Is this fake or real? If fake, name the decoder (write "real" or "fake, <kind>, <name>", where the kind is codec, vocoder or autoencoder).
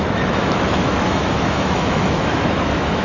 fake, autoencoder, DAC-VAE